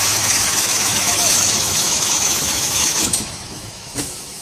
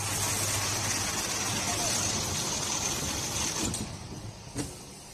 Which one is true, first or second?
second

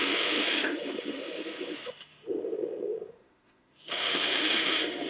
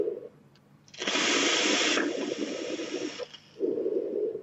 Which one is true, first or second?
second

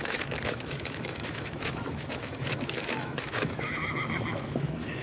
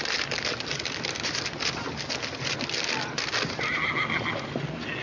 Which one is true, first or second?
second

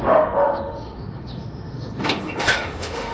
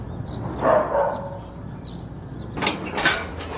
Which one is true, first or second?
second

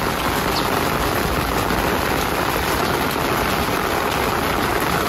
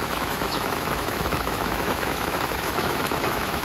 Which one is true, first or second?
first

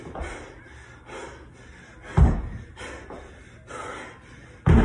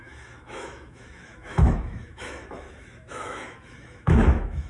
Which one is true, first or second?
first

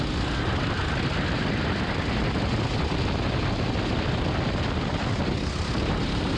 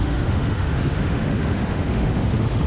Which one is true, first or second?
first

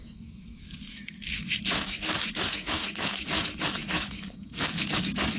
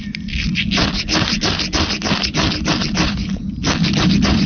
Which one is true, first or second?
second